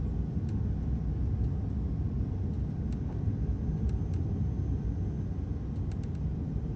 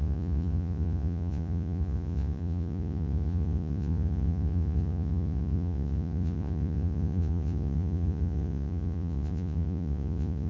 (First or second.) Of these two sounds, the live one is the first